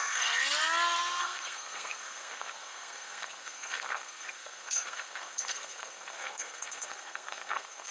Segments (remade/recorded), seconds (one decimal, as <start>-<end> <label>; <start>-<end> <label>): 0.0-0.4 remade; 0.4-1.2 recorded; 1.2-7.9 remade

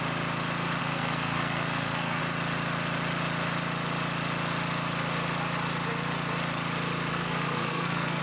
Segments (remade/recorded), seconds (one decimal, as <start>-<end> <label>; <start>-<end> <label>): 0.0-0.8 recorded; 0.8-2.2 remade; 2.2-7.1 recorded; 7.1-8.2 remade

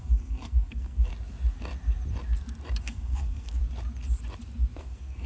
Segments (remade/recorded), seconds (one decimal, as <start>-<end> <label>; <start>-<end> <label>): 0.0-1.1 remade; 1.1-2.8 recorded; 2.8-3.6 remade; 3.6-4.8 recorded; 4.8-5.3 remade

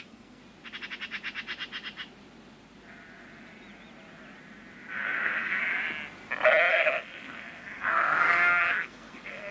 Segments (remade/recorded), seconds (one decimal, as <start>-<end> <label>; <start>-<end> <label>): 0.0-0.4 remade; 0.4-4.9 recorded; 4.9-5.6 remade; 5.6-6.7 recorded; 6.7-9.5 remade

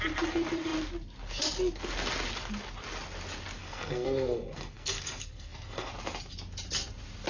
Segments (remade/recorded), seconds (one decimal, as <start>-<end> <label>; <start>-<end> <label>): 0.0-3.6 recorded; 3.6-5.9 remade; 5.9-7.3 recorded

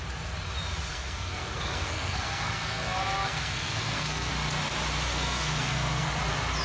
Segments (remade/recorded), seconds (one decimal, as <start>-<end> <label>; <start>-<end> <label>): 0.0-0.9 recorded; 0.9-4.3 remade; 4.3-5.1 recorded; 5.1-6.1 remade; 6.1-6.6 recorded